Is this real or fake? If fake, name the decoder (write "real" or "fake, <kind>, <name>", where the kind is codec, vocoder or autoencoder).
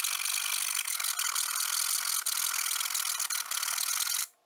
real